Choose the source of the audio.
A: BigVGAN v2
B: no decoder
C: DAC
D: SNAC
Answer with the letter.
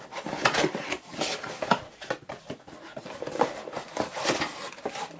B